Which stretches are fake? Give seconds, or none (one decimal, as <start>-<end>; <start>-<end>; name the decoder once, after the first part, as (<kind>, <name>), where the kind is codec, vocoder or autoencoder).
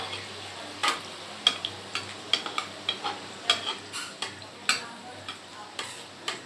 none